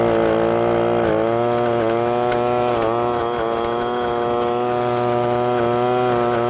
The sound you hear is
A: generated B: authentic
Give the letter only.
B